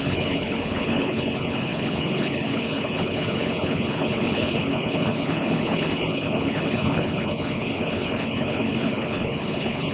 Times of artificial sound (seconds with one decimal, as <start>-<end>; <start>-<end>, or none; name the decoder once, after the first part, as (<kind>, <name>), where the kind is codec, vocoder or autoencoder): 0.0-9.9 (codec, HILCodec)